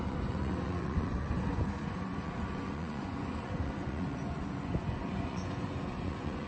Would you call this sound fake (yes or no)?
yes